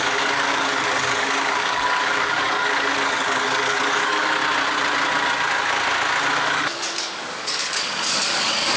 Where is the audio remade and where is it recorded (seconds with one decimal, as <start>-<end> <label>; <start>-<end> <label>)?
0.0-4.4 remade; 4.4-6.4 recorded; 6.4-8.8 remade